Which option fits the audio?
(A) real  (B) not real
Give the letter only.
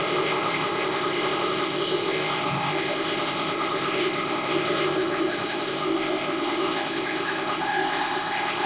B